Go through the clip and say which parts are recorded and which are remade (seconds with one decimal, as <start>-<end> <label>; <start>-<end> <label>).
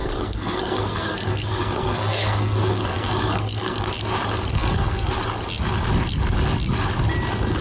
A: 0.0-3.9 remade; 3.9-4.5 recorded; 4.5-5.1 remade; 5.1-7.6 recorded